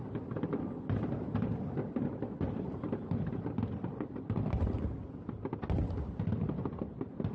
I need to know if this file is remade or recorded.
recorded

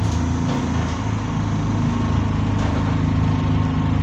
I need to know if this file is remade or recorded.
recorded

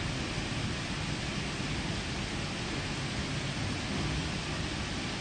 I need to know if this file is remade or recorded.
recorded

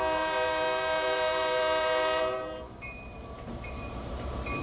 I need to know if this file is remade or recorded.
remade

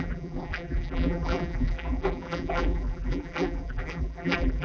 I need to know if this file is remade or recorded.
remade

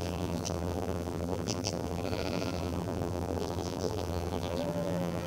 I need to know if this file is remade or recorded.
remade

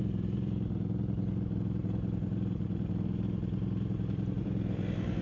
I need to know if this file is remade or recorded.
remade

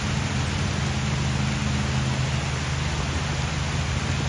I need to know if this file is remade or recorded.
recorded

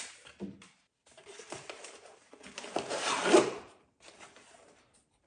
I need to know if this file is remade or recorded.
remade